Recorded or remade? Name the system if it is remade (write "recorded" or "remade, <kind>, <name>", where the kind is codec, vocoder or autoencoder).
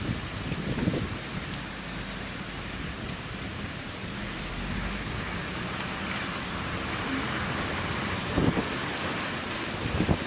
recorded